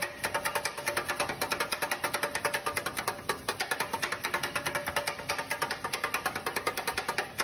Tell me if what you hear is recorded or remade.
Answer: recorded